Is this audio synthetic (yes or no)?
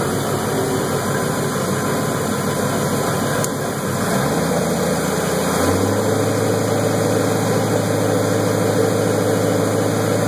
no